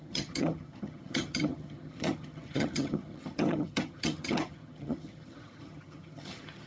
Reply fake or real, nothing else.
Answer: fake